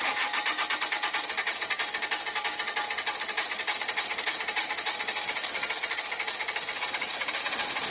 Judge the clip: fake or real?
real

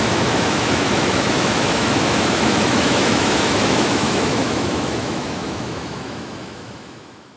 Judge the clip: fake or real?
fake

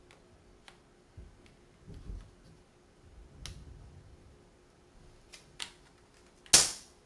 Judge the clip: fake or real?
real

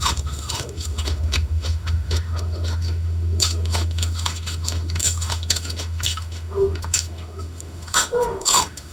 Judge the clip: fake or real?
fake